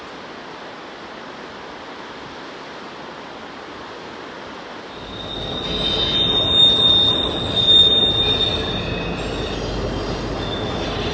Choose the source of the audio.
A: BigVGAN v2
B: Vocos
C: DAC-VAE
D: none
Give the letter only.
D